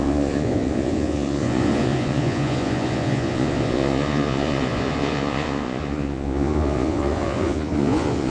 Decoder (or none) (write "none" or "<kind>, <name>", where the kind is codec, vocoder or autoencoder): vocoder, Vocos